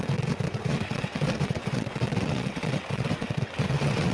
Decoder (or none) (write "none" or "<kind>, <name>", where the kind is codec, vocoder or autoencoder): vocoder, WaveNeXt